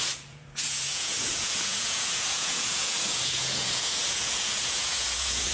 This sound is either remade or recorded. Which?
remade